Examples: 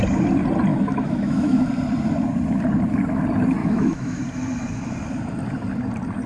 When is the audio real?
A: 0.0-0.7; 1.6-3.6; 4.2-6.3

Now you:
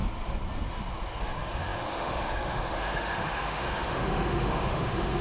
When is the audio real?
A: 0.0-1.2

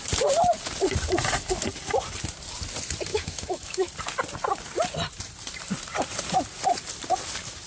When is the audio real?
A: 0.0-3.1; 3.9-7.7

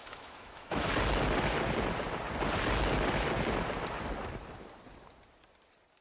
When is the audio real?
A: 0.9-6.0

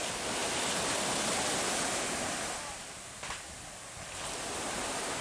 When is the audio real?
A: 0.0-5.2

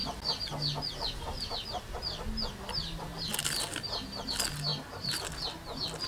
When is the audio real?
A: 0.0-6.1

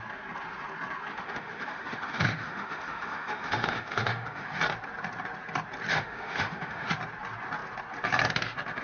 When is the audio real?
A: 0.0-1.1; 4.6-5.9; 6.9-8.8